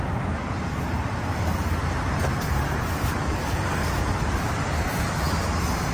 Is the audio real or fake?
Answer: fake